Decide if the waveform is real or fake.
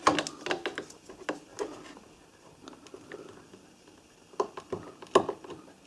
real